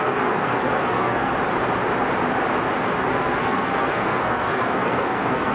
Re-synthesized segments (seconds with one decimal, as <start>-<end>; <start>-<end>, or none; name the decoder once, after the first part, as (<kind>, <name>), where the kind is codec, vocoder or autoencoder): 0.0-1.3 (codec, SNAC); 3.1-5.5